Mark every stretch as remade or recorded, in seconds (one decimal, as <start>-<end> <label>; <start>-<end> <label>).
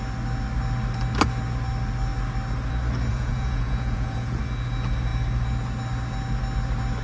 0.0-3.1 recorded; 3.1-4.4 remade; 4.4-7.0 recorded